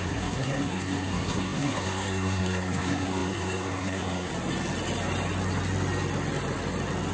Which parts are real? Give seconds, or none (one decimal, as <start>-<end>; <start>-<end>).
4.3-7.1